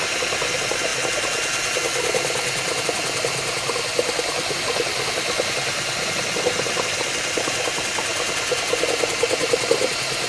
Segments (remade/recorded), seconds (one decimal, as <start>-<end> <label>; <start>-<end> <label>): 0.0-10.3 recorded